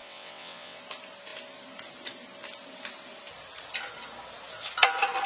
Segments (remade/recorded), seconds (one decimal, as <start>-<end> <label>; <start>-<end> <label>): 0.0-0.8 remade; 0.8-5.3 recorded